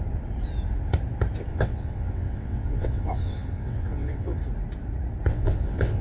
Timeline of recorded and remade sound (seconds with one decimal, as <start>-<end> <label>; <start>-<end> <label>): 0.0-1.5 recorded; 1.5-4.4 remade; 4.4-5.3 recorded; 5.3-6.0 remade